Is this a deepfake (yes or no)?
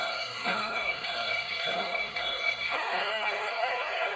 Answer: yes